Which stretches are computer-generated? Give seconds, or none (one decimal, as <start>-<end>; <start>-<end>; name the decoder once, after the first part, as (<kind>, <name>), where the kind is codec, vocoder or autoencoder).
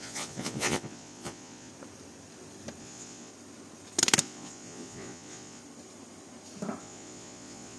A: 0.0-1.7 (vocoder, Vocos); 2.8-3.3; 4.2-5.6; 6.8-7.8